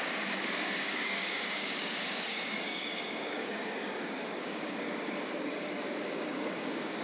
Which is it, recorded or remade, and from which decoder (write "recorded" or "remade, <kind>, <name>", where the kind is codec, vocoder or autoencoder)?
remade, codec, DAC